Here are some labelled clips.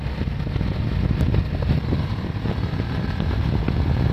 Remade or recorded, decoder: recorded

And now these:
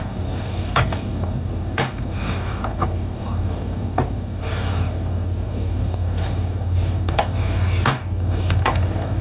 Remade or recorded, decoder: remade, codec, DAC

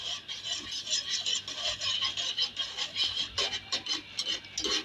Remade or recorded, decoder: recorded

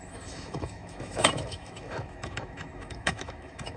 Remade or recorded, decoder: remade, autoencoder, DAC-VAE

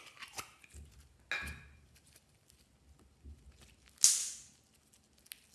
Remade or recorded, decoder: recorded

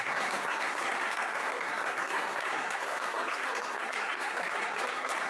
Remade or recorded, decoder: remade, codec, SNAC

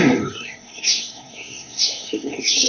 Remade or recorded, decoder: remade, codec, SNAC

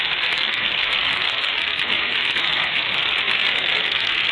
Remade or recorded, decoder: remade, codec, SNAC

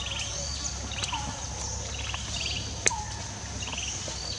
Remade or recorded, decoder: recorded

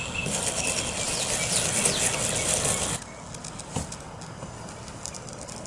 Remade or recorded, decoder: recorded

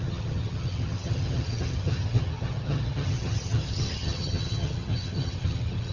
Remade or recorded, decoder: remade, vocoder, HiFi-GAN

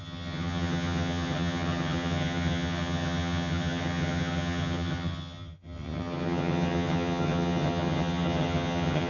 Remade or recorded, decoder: remade, vocoder, HiFi-GAN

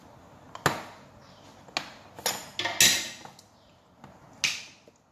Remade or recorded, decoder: recorded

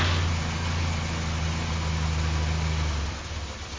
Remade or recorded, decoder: recorded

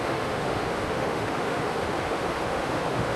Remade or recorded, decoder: remade, autoencoder, DAC-VAE